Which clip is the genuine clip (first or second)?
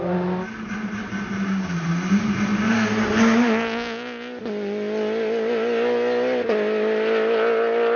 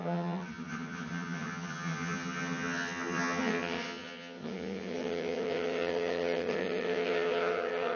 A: first